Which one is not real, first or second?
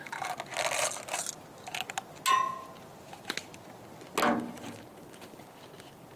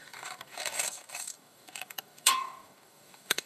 second